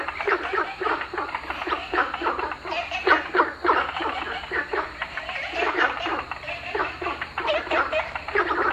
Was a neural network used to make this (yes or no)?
yes